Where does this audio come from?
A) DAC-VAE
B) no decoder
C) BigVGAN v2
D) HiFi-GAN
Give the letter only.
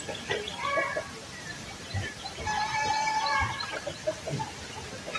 B